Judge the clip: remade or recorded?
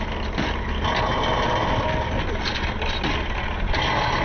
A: recorded